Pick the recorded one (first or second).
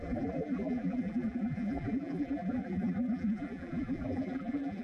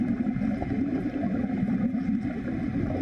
second